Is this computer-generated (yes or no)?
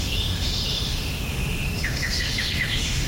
yes